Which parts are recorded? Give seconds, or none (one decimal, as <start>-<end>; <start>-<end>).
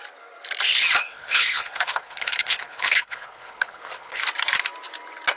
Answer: 0.0-1.0; 4.2-5.4